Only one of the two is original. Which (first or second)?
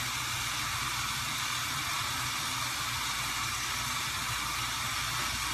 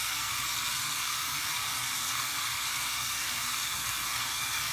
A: first